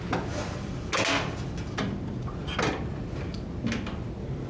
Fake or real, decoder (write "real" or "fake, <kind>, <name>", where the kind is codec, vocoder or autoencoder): real